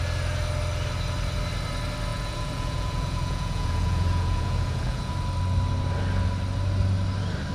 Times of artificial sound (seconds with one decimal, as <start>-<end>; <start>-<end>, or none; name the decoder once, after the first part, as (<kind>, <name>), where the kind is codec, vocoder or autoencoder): 2.1-5.1 (vocoder, Vocos)